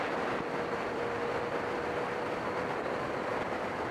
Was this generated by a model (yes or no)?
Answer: no